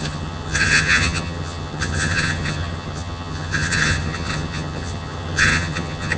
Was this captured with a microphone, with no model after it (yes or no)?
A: no